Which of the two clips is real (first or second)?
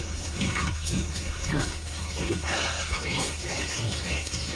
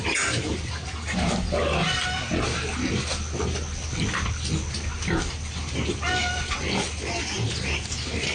second